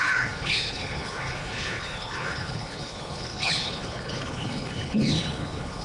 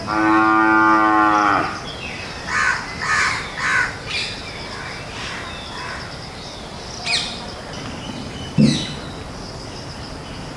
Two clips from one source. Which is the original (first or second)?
second